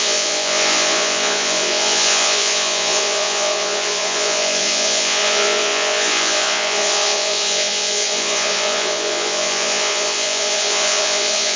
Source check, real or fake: fake